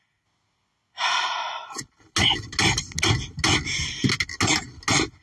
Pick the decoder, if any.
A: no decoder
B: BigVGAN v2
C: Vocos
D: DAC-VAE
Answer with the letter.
A